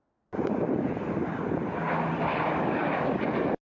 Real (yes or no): yes